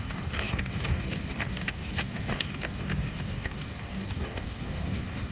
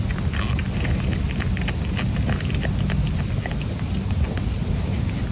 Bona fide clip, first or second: second